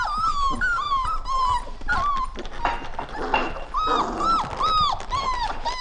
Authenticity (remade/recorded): recorded